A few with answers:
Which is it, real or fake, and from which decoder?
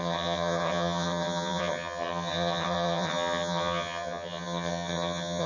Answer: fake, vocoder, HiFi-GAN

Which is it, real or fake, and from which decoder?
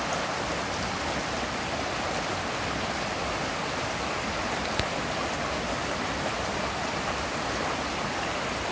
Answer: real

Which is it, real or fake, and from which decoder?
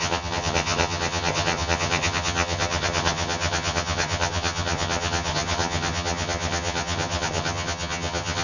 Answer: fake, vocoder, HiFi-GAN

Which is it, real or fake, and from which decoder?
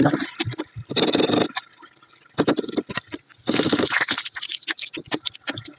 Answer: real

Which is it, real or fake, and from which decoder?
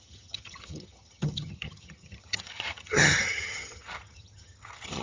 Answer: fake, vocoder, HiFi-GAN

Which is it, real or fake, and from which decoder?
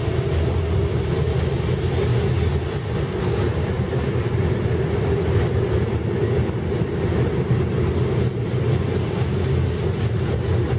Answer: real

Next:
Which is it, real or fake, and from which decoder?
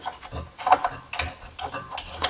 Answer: real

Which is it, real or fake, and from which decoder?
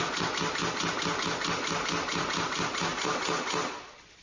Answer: real